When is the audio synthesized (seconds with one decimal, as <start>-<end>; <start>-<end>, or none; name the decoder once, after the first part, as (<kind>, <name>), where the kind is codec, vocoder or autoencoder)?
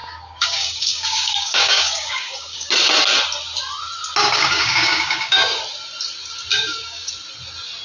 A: 0.0-2.7 (codec, DAC); 4.2-5.6; 6.5-7.1